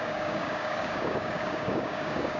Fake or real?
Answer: fake